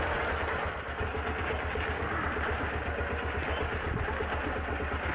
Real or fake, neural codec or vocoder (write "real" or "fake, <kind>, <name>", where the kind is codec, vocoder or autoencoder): real